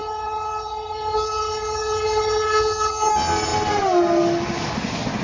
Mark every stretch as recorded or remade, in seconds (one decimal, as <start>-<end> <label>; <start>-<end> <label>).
0.0-3.1 remade; 3.1-5.2 recorded